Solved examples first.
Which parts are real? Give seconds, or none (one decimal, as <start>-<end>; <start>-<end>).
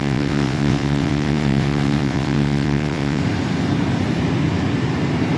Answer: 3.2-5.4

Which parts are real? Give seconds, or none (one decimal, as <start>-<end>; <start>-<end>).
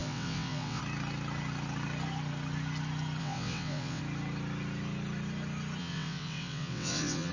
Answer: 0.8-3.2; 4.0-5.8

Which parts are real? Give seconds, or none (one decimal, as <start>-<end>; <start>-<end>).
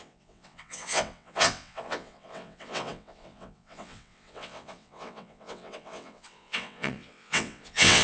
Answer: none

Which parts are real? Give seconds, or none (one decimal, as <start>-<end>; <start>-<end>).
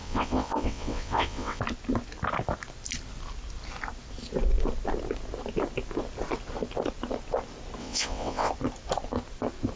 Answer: 1.6-7.8; 8.5-9.8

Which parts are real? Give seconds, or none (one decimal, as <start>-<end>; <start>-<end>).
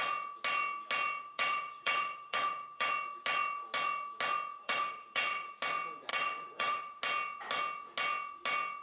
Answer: 0.0-1.2; 2.9-4.6; 5.5-6.1; 7.0-8.8